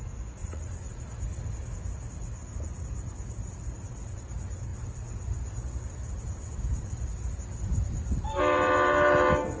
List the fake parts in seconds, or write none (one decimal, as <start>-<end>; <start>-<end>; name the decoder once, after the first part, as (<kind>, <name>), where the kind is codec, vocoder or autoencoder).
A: 0.4-1.0 (vocoder, Vocos)